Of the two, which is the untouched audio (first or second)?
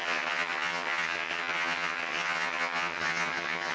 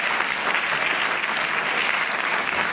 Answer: second